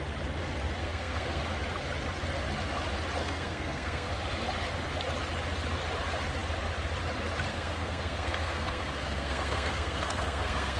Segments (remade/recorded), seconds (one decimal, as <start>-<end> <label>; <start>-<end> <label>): 0.0-0.8 recorded; 0.8-1.4 remade; 1.4-3.2 recorded; 3.2-4.1 remade; 4.1-7.5 recorded; 7.5-10.8 remade